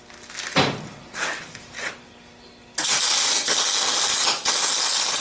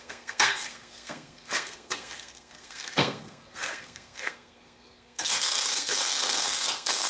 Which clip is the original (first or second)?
first